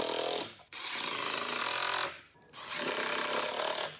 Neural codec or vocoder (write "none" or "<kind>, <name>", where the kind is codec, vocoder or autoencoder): none